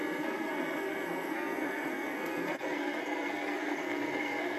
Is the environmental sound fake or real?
fake